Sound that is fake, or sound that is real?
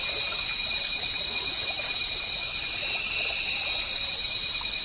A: real